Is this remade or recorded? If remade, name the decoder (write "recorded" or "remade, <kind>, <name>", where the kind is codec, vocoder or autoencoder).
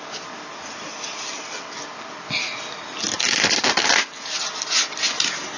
recorded